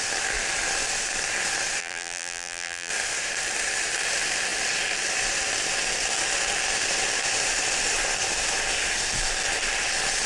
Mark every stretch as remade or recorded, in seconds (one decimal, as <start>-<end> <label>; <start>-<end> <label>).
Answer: 0.0-1.8 recorded; 1.8-2.9 remade; 2.9-10.3 recorded